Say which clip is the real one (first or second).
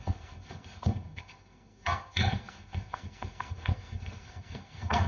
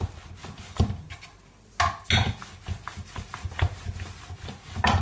second